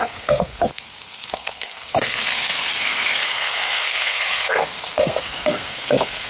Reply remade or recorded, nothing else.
remade